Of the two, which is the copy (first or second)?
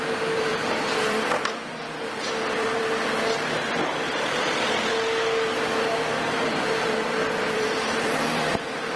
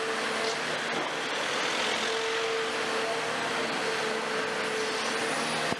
first